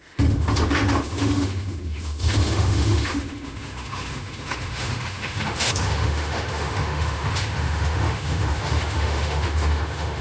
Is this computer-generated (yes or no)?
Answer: yes